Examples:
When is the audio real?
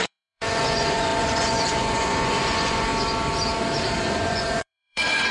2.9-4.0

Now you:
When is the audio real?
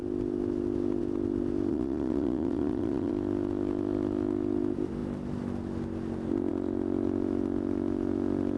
0.0-1.7; 3.1-8.6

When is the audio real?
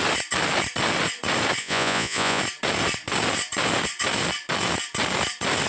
0.0-1.6; 2.4-5.7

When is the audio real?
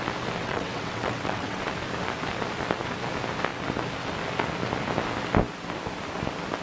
0.0-0.4; 1.6-6.6